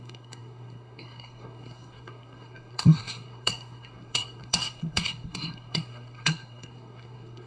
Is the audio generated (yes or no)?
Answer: yes